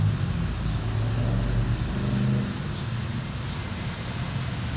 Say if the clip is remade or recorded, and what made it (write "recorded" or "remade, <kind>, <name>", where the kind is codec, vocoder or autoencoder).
recorded